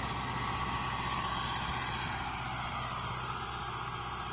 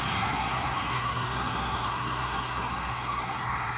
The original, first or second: first